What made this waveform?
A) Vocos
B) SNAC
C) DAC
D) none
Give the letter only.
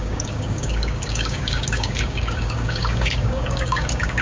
C